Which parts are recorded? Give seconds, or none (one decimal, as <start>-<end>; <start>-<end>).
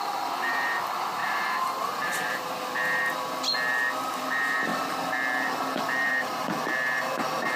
0.0-1.2; 2.6-7.6